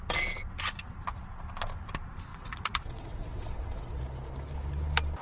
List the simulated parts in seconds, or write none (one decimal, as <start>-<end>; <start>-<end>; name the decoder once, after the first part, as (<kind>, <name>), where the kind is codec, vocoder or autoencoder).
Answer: 2.3-4.0 (vocoder, WaveNeXt)